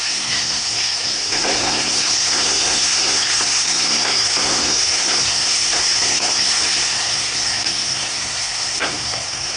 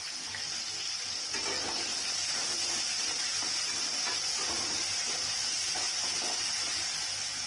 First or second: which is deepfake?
first